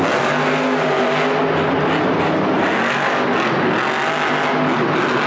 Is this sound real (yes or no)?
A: yes